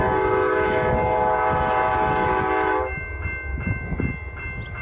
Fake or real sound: real